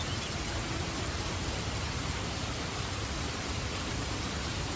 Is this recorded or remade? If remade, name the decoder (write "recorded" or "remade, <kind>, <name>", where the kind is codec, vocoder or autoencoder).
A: recorded